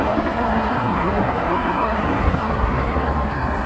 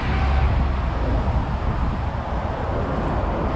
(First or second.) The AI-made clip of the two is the first